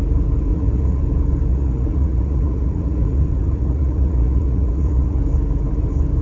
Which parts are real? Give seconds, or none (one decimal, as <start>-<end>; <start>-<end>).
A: 0.0-0.5; 1.0-1.5; 5.2-6.2